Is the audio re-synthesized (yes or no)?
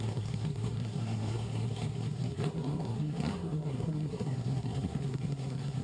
yes